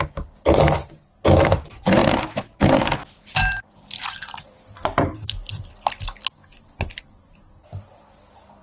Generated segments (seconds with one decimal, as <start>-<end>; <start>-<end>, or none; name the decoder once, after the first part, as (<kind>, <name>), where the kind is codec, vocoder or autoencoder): 0.0-6.4 (vocoder, BigVGAN v2); 7.0-8.6